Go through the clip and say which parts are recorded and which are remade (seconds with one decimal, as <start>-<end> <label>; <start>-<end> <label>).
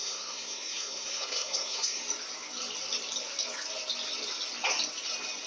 0.0-2.0 remade; 2.0-5.5 recorded